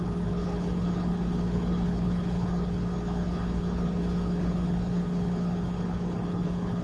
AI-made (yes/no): yes